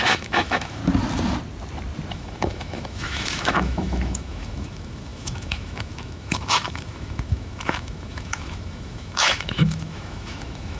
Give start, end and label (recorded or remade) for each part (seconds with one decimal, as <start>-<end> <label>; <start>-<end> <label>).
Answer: 0.0-0.8 remade; 0.8-2.1 recorded; 2.1-10.8 remade